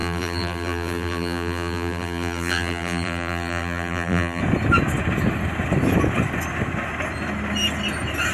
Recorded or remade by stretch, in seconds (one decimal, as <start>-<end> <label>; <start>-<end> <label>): 0.0-4.4 remade; 4.4-8.3 recorded